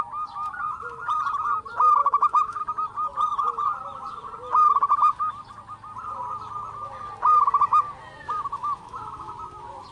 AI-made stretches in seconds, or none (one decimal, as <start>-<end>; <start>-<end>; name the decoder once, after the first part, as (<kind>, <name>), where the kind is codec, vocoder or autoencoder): 2.0-2.6 (autoencoder, DAC-VAE); 8.6-9.3